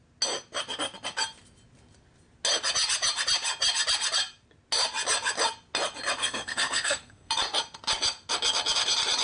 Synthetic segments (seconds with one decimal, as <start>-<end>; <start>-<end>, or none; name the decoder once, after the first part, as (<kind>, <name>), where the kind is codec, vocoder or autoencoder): 6.2-7.3 (codec, SNAC)